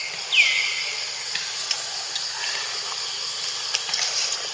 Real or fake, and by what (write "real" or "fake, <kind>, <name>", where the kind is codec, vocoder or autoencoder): real